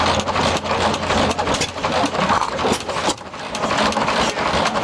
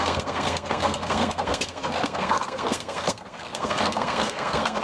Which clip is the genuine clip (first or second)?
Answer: first